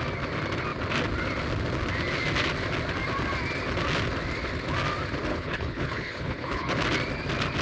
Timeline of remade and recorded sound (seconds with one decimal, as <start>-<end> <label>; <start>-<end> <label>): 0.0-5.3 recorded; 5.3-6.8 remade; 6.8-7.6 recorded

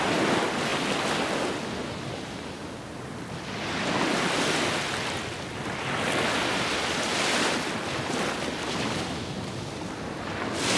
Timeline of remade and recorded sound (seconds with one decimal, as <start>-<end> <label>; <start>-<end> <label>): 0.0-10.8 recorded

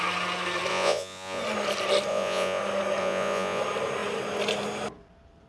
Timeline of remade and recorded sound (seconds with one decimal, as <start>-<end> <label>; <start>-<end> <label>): 0.0-0.7 recorded; 0.7-1.4 remade; 1.4-2.1 recorded; 2.1-2.6 remade; 2.6-3.0 recorded; 3.0-3.6 remade; 3.6-5.5 recorded

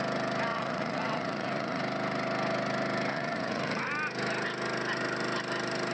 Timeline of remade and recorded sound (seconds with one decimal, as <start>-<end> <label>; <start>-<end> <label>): 0.0-0.5 recorded; 0.5-1.8 remade; 1.8-3.1 recorded; 3.1-3.9 remade; 3.9-5.9 recorded

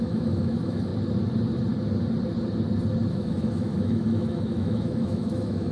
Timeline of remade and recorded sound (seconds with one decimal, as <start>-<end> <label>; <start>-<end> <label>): 0.0-0.9 remade; 0.9-3.1 recorded; 3.1-5.7 remade

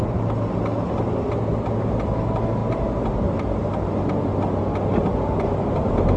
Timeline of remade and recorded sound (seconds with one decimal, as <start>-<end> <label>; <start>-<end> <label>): 0.0-6.2 recorded

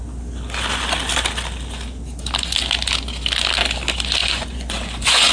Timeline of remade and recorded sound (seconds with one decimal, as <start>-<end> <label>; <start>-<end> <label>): 0.0-4.2 recorded; 4.2-5.3 remade

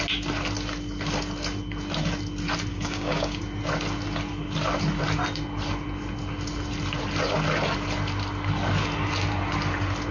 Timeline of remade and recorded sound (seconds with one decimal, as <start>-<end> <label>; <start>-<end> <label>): 0.0-2.7 recorded; 2.7-3.4 remade; 3.4-10.1 recorded